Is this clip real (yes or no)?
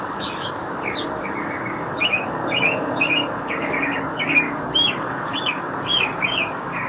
no